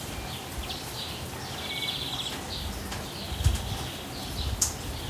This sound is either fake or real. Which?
real